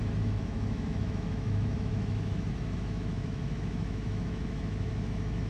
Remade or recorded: remade